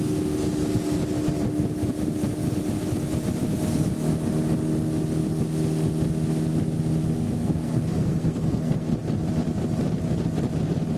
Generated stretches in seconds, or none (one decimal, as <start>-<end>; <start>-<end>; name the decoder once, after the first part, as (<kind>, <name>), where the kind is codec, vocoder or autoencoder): 7.1-8.9 (codec, SNAC)